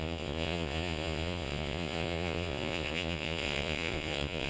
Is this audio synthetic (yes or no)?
yes